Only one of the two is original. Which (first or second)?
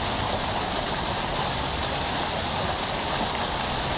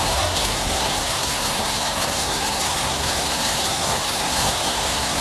first